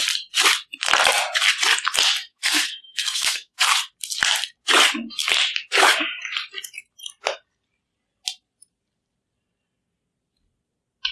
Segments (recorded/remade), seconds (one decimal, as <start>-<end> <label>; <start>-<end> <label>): 0.0-2.3 recorded; 2.3-3.6 remade; 3.6-11.1 recorded